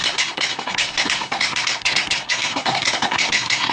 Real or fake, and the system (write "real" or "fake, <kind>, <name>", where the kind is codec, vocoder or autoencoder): fake, codec, SNAC